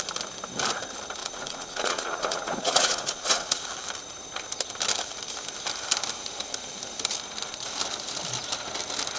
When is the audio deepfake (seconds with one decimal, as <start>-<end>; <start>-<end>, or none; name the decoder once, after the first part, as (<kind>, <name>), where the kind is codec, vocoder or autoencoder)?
1.2-3.6 (vocoder, Vocos)